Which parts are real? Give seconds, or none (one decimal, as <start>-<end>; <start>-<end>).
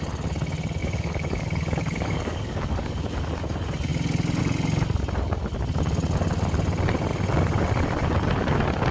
0.0-0.8; 3.3-8.9